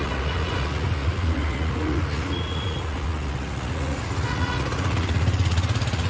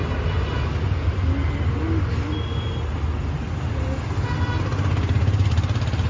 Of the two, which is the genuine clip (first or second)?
second